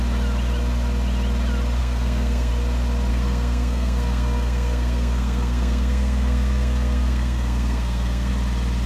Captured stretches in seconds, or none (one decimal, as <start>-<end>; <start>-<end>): 0.0-1.8; 2.5-3.1; 8.3-8.9